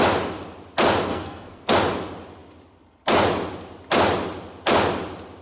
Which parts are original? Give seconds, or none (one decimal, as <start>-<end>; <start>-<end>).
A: 0.0-1.1; 1.7-5.4